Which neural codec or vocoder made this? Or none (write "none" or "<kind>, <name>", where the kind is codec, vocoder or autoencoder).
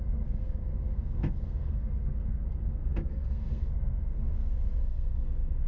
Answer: codec, SNAC